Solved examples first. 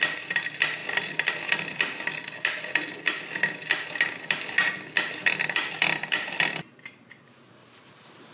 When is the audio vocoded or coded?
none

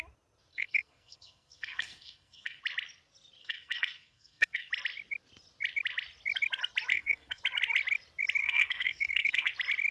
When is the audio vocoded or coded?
0.5-2.6; 3.4-4.7; 6.9-7.4; 8.4-9.5

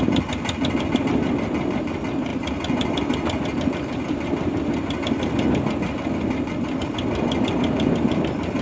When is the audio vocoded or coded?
none

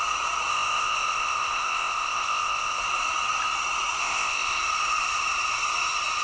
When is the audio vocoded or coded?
0.5-2.8; 4.0-4.6

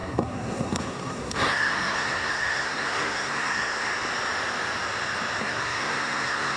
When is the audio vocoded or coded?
0.0-3.9; 5.4-6.6

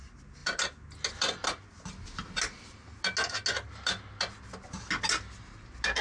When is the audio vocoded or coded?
none

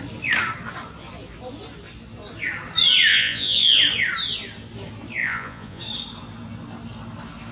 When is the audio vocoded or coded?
3.1-3.8; 5.2-5.8

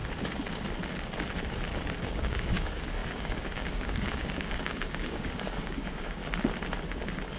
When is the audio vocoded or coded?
2.0-6.2